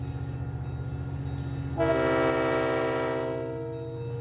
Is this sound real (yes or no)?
yes